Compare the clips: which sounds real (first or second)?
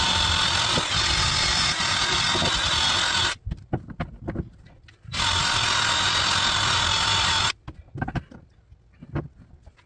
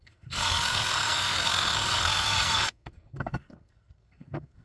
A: first